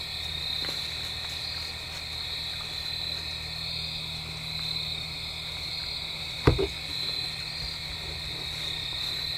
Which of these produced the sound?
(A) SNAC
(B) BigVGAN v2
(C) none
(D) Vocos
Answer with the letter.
C